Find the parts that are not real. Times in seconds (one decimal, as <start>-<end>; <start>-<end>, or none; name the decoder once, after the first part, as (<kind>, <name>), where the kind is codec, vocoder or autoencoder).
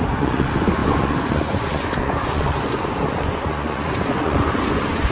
0.0-5.1 (vocoder, Vocos)